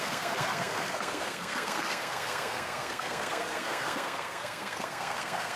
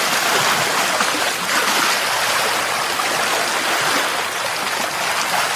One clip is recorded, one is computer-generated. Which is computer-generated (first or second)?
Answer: first